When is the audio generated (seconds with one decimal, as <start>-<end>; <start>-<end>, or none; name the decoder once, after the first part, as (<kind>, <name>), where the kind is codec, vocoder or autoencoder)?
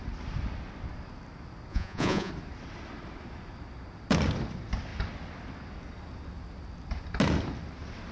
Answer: 1.7-2.3 (vocoder, Vocos)